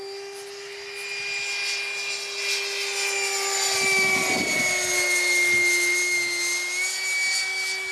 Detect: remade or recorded recorded